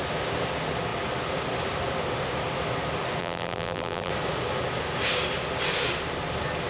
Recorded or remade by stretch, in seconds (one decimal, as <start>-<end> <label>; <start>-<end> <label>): 0.0-3.2 recorded; 3.2-4.1 remade; 4.1-6.7 recorded